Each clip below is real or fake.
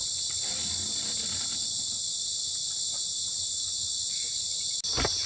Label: real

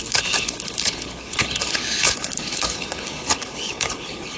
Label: fake